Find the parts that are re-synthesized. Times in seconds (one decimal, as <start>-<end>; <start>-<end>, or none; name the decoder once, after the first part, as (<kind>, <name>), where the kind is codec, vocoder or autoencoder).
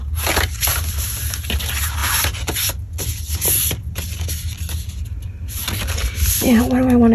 none